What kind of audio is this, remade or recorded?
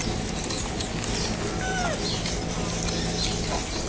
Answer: recorded